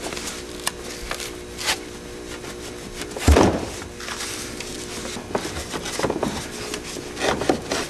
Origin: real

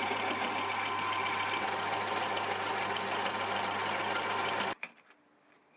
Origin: fake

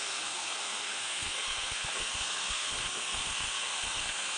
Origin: fake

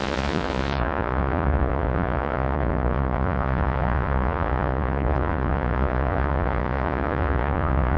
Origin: fake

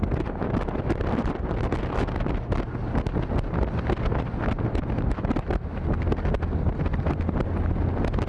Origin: real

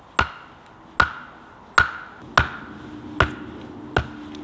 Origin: real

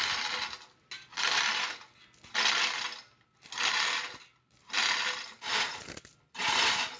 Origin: real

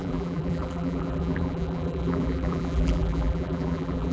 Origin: fake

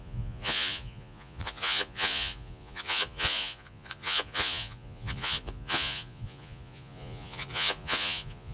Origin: fake